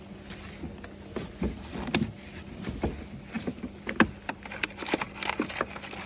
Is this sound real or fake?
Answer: real